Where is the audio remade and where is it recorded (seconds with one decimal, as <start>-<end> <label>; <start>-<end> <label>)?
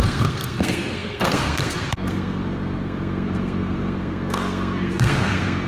0.0-5.7 remade